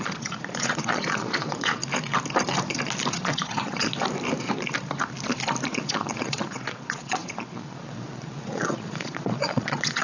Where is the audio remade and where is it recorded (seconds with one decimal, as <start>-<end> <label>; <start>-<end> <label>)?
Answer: 0.0-1.8 remade; 1.8-3.1 recorded; 3.1-3.9 remade; 3.9-5.7 recorded; 5.7-10.0 remade